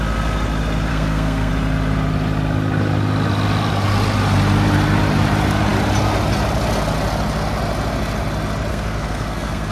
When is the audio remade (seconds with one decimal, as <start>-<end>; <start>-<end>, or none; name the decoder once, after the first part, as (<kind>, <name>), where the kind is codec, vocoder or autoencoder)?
0.9-1.5 (codec, SNAC); 8.7-9.7